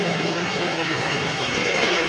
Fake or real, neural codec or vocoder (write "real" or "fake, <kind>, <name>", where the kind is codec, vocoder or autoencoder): fake, codec, SNAC